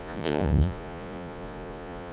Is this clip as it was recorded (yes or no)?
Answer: no